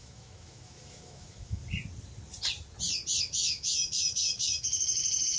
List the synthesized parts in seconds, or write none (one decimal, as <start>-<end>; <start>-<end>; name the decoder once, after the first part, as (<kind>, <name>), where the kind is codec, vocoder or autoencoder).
0.0-1.6 (autoencoder, DAC-VAE); 3.2-5.4

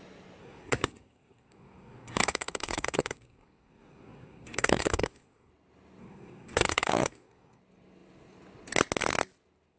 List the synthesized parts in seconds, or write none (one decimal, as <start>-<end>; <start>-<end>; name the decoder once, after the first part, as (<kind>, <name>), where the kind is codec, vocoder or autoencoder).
0.4-5.5 (codec, SNAC); 6.0-7.6

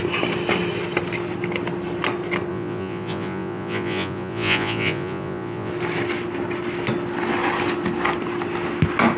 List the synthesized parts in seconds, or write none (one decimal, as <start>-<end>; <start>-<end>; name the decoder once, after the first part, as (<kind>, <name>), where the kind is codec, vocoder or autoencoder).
2.5-5.7 (vocoder, Vocos)

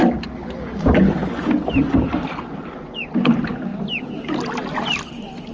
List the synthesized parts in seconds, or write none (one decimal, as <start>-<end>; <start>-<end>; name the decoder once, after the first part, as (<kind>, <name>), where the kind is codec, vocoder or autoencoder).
none

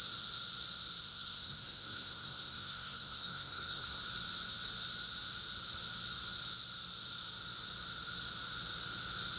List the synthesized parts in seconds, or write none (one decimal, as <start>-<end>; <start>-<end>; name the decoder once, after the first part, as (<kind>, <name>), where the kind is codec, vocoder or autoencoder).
1.0-4.0 (codec, SNAC)

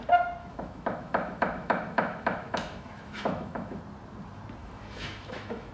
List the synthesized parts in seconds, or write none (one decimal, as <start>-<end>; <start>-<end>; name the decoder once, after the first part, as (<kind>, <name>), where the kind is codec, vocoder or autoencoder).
0.4-3.8 (autoencoder, DAC-VAE); 4.6-5.7